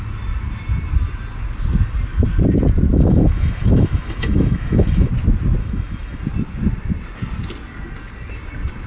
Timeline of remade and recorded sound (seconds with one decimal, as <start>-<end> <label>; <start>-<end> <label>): 0.0-2.9 recorded; 2.9-5.1 remade; 5.1-5.6 recorded; 5.6-6.2 remade; 6.2-8.9 recorded